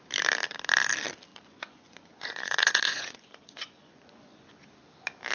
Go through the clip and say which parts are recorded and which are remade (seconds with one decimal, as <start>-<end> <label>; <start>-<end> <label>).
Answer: 0.0-1.3 recorded; 1.3-4.5 remade; 4.5-5.3 recorded